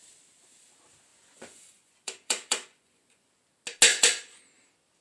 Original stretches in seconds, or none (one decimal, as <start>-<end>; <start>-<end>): 0.0-1.1; 3.3-3.9; 4.4-5.0